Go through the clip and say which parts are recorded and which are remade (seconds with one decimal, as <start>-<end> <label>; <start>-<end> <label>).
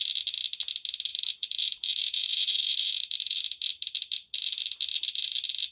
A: 0.0-1.1 recorded; 1.1-3.4 remade; 3.4-5.7 recorded